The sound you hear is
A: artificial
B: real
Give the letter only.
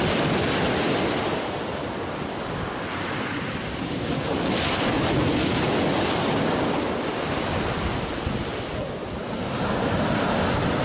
B